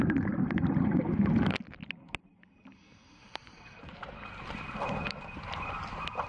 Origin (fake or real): real